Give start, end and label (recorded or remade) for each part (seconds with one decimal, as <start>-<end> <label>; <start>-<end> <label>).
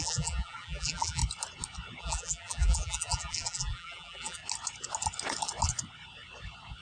0.0-1.2 remade; 1.2-2.0 recorded; 2.0-4.4 remade; 4.4-6.8 recorded